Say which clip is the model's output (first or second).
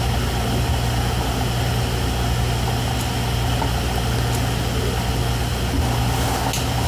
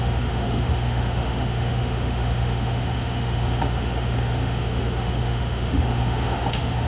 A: second